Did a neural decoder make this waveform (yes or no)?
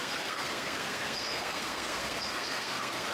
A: yes